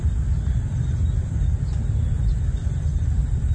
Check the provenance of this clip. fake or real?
real